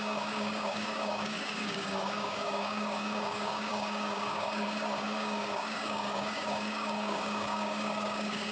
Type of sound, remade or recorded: remade